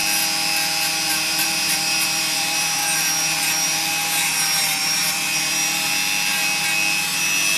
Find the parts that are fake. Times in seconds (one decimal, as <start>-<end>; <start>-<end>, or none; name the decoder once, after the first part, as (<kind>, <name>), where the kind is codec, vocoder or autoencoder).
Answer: 1.1-2.8 (vocoder, BigVGAN v2); 4.8-5.9